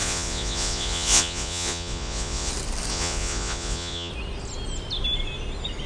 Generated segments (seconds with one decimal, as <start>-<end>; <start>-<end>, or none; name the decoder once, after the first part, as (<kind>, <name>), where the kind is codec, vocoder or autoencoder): 0.0-2.5 (vocoder, Vocos); 2.9-4.1

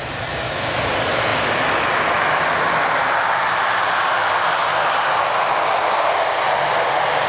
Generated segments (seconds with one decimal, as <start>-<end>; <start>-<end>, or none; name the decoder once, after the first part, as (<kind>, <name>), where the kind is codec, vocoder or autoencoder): none

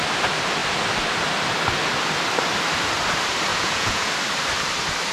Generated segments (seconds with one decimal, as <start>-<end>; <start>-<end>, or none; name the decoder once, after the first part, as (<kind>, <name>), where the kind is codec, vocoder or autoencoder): 3.5-4.1 (vocoder, Vocos)